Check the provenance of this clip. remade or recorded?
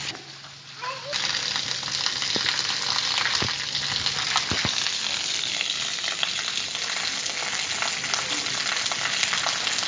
recorded